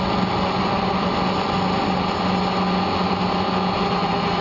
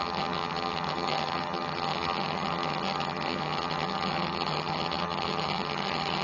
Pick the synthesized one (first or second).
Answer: second